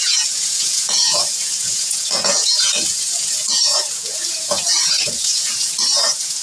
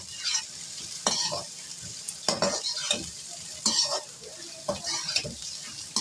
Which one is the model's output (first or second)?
first